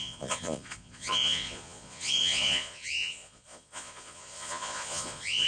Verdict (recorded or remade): remade